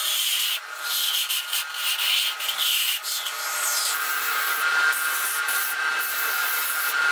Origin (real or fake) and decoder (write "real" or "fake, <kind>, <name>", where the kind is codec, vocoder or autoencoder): real